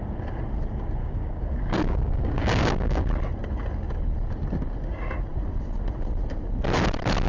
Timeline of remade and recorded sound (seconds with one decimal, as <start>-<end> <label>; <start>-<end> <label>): 0.0-1.0 recorded; 1.0-3.0 remade; 3.0-7.3 recorded